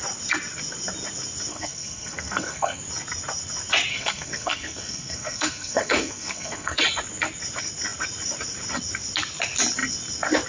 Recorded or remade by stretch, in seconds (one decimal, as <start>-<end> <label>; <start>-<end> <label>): 0.0-1.5 recorded; 1.5-2.8 remade; 2.8-3.9 recorded; 3.9-6.8 remade; 6.8-10.5 recorded